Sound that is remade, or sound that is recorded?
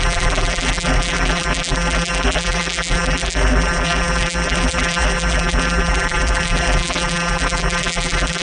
remade